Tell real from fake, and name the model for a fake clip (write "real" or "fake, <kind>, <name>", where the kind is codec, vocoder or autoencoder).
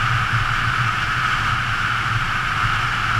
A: real